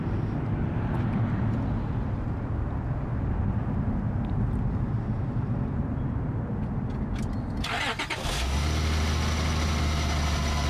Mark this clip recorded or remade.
recorded